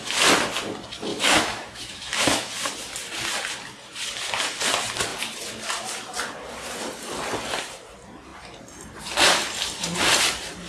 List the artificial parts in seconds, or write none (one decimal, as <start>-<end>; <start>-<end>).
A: 1.1-2.5